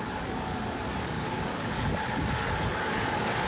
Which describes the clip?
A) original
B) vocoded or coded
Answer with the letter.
B